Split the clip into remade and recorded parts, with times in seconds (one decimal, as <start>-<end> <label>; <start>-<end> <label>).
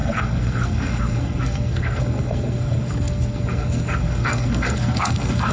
0.0-5.5 remade